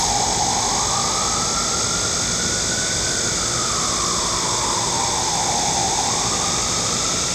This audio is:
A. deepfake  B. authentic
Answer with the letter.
B